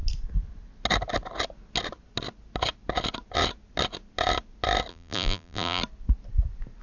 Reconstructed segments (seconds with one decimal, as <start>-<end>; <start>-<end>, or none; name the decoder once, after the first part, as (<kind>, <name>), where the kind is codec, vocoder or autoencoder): 4.9-5.8 (vocoder, BigVGAN v2)